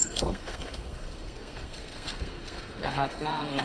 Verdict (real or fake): fake